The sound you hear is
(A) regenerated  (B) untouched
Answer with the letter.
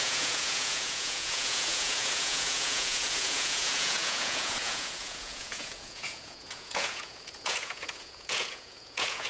A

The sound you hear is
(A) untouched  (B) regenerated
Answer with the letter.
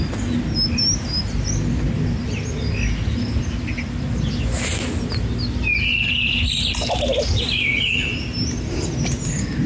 A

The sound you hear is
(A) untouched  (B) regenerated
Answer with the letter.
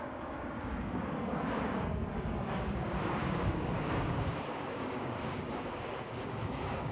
B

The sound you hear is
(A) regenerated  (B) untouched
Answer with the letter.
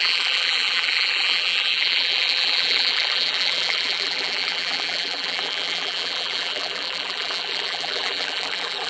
A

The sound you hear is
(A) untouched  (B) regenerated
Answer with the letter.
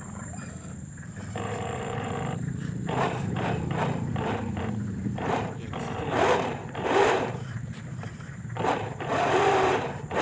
B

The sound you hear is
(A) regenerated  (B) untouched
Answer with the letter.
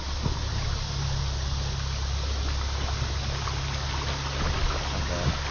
B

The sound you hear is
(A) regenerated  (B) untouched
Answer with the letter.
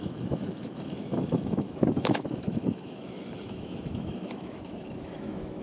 A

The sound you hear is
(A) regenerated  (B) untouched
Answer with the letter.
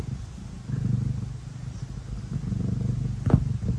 B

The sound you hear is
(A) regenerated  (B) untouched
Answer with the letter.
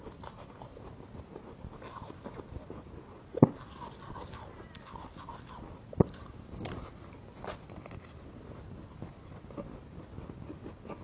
B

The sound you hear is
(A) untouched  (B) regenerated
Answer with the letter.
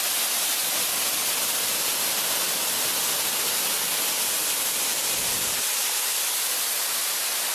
A